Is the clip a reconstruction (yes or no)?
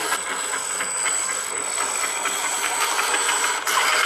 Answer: no